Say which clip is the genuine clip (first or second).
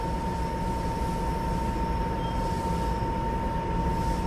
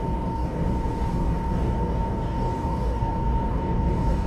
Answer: first